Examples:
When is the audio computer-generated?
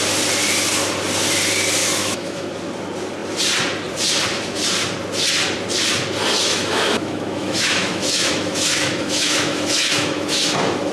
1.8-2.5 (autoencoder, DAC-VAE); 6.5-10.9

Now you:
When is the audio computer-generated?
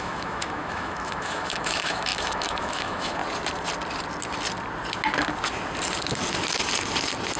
0.0-3.2 (autoencoder, DAC-VAE)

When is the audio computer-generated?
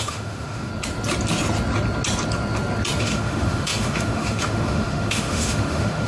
0.0-0.7 (autoencoder, DAC-VAE); 3.0-6.1